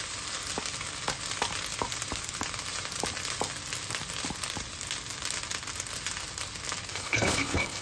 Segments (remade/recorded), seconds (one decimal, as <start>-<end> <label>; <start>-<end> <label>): 0.0-6.9 recorded; 6.9-7.8 remade